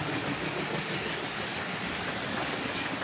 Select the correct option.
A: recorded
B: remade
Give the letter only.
B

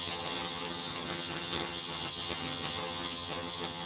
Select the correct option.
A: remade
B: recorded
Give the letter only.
A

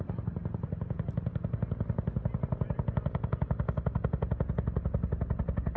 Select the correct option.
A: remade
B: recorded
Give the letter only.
B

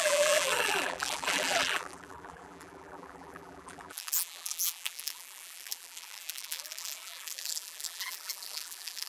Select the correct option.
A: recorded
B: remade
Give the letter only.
B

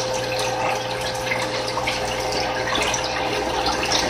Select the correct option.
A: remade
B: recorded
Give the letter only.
B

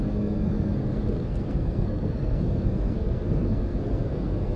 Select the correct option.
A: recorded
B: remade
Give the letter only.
B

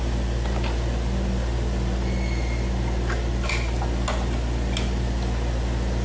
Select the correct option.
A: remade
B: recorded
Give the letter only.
B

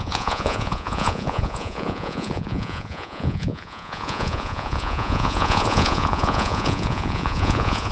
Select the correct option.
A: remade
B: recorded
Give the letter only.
A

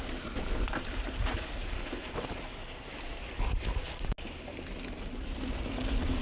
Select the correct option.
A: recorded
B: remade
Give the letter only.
A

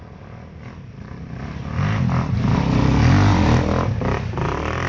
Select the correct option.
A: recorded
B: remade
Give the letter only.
A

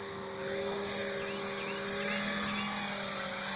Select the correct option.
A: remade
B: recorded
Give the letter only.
B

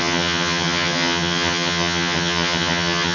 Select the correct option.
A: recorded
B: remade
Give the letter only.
B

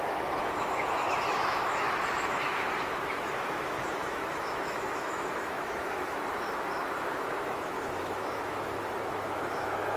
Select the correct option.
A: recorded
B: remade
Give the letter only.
B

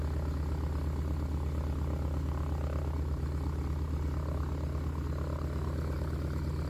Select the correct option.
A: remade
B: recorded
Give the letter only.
B